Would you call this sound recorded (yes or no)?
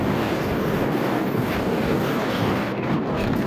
no